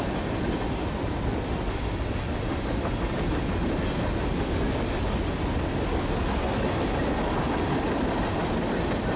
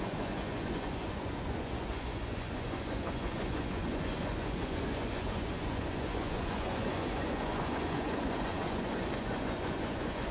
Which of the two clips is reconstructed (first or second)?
second